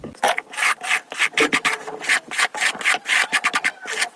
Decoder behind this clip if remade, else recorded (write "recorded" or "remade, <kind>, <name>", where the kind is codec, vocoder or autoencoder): recorded